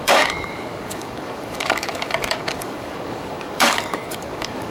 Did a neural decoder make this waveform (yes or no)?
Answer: yes